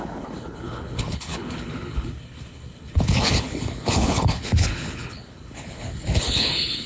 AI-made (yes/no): yes